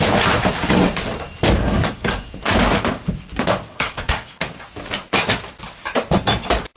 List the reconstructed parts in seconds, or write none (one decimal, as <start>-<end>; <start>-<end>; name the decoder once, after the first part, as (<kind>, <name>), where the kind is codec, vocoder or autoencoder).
1.6-2.3 (codec, SNAC); 3.7-4.4